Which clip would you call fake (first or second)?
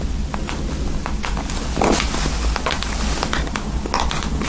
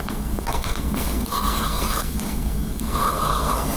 second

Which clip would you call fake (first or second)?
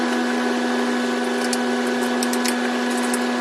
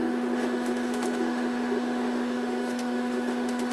second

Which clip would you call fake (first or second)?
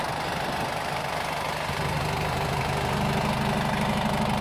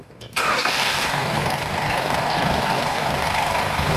second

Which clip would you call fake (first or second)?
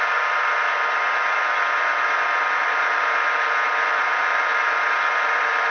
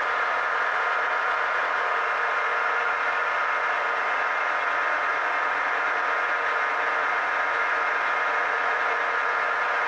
second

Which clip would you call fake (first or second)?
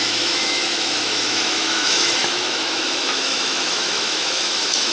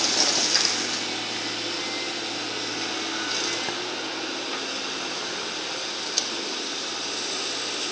first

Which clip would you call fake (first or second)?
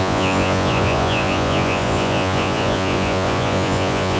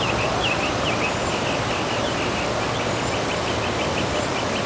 first